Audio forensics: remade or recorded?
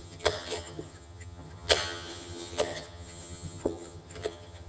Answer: remade